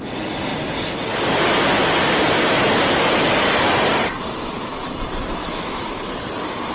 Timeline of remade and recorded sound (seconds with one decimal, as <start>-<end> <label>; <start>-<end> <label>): 0.0-5.4 recorded; 5.4-5.9 remade; 5.9-6.7 recorded